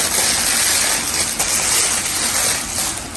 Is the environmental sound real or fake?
real